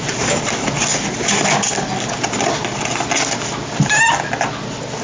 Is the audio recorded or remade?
recorded